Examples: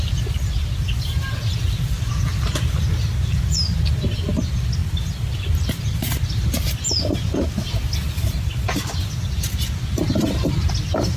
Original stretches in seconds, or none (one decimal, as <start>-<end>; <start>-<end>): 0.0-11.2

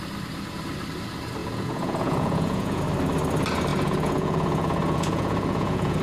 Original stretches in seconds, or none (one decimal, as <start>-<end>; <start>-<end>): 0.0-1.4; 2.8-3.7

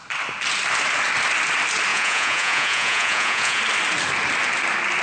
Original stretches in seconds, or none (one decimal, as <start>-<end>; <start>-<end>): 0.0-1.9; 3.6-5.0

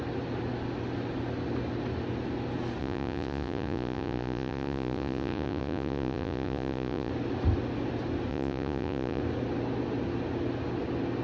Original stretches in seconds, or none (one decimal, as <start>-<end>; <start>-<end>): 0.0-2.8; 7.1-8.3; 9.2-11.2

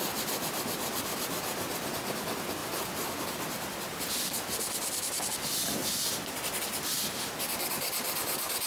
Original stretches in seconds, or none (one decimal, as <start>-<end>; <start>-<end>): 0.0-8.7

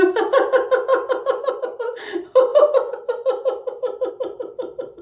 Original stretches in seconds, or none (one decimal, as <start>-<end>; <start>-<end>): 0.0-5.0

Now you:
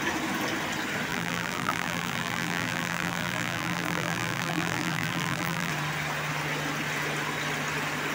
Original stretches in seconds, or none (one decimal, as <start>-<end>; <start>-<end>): 0.0-1.1; 5.7-8.1

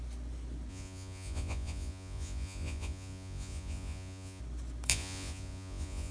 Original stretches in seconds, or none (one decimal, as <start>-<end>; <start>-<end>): 0.0-0.7; 4.4-4.9